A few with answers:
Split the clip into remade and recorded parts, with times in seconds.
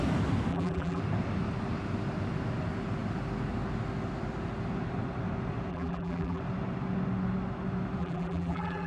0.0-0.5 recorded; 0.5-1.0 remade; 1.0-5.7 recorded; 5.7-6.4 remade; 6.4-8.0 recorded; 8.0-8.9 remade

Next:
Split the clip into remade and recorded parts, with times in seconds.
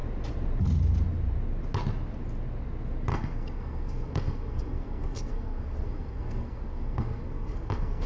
0.0-3.1 recorded; 3.1-8.1 remade